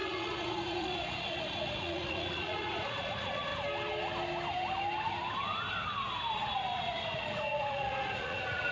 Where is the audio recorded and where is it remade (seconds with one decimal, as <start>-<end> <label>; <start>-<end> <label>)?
0.0-3.5 remade; 3.5-6.3 recorded; 6.3-8.7 remade

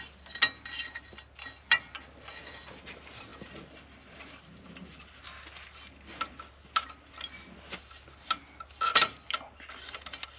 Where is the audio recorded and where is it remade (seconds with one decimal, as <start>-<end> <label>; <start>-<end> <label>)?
0.0-10.4 recorded

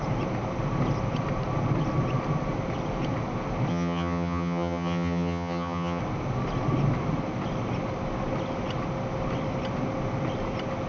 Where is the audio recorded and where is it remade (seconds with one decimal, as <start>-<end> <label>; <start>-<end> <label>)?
0.0-3.7 recorded; 3.7-6.0 remade; 6.0-10.9 recorded